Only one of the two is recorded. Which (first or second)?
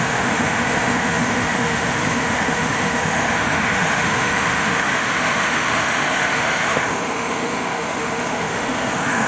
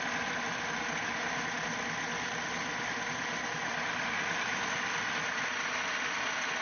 second